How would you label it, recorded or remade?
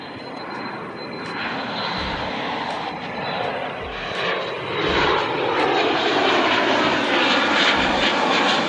recorded